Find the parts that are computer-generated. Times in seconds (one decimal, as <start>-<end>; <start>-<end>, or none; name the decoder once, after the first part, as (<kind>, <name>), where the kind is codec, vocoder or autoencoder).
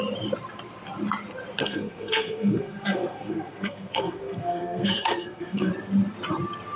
1.6-5.7 (codec, SNAC)